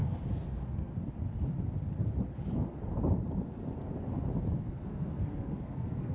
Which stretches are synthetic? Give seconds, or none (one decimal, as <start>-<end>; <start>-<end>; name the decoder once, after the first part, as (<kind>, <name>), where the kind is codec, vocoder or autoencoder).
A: 0.0-0.9 (codec, SNAC); 4.6-6.1